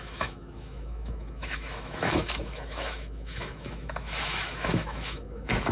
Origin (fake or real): fake